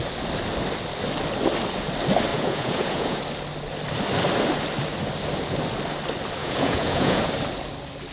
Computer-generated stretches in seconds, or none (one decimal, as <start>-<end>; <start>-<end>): 2.3-3.2; 6.4-7.2